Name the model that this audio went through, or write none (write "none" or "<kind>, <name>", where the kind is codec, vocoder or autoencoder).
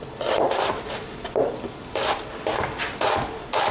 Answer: none